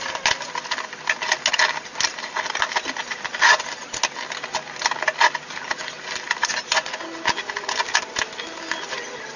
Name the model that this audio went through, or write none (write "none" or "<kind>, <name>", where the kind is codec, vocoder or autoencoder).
none